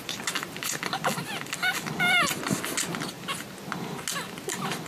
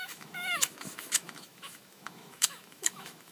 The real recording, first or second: first